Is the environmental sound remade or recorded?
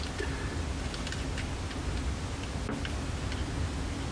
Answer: recorded